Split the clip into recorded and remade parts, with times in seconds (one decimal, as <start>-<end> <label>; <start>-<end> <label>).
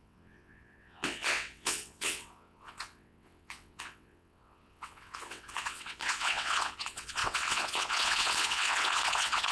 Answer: 0.0-9.5 remade